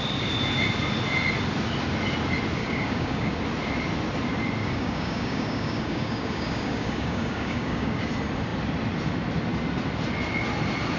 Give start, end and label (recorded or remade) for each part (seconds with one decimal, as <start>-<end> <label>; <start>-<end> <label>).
0.0-2.6 recorded; 2.6-3.4 remade; 3.4-4.6 recorded; 4.6-8.1 remade; 8.1-11.0 recorded